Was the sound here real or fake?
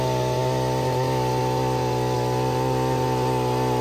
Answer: real